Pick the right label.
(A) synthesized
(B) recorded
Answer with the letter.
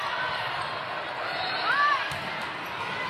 B